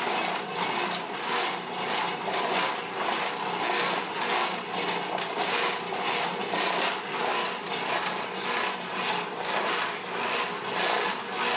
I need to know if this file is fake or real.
real